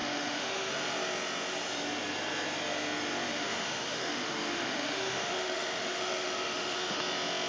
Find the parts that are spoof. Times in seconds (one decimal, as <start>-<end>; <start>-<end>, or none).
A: 0.0-0.7; 3.3-7.0